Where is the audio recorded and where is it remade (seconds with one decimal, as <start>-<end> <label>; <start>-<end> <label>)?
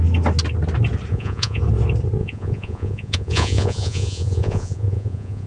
0.0-1.1 recorded; 1.1-1.6 remade; 1.6-2.2 recorded; 2.2-5.5 remade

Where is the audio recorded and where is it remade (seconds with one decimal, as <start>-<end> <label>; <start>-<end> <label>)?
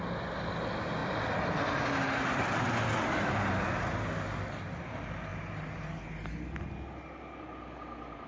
0.0-8.3 recorded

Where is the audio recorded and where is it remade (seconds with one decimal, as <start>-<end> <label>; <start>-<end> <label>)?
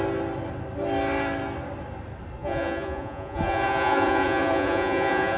0.0-2.4 recorded; 2.4-5.4 remade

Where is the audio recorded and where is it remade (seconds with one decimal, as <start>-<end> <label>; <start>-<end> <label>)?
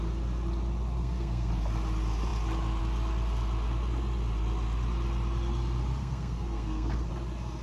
0.0-1.0 recorded; 1.0-1.5 remade; 1.5-6.0 recorded; 6.0-7.1 remade; 7.1-7.6 recorded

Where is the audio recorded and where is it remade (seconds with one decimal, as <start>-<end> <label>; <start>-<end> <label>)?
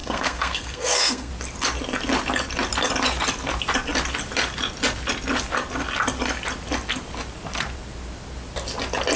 0.0-1.3 remade; 1.3-9.2 recorded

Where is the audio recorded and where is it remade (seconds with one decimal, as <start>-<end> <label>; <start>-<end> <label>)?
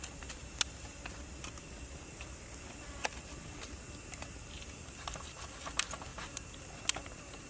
0.0-7.5 recorded